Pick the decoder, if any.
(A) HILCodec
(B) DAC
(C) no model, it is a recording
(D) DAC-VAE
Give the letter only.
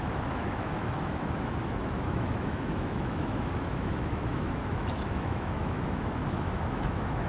D